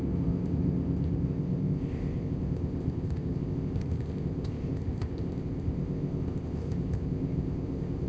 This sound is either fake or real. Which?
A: fake